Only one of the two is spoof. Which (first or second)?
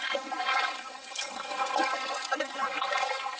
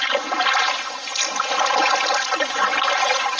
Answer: first